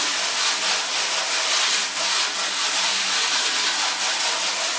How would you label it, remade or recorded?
recorded